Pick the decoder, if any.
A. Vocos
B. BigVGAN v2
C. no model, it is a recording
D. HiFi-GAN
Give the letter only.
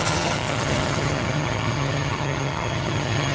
D